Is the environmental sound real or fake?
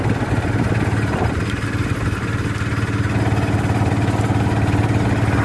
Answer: real